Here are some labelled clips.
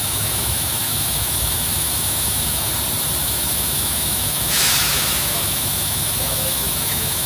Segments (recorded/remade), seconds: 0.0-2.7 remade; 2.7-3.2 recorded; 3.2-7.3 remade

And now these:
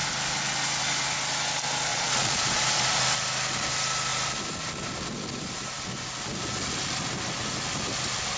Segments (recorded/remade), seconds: 0.0-1.9 recorded; 1.9-2.5 remade; 2.5-8.4 recorded

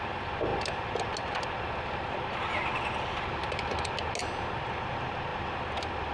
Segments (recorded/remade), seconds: 0.0-6.1 recorded

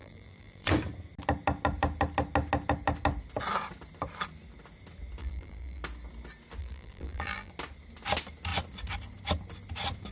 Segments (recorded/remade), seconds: 0.0-0.7 remade; 0.7-5.2 recorded; 5.2-5.8 remade; 5.8-6.6 recorded; 6.6-7.5 remade; 7.5-10.1 recorded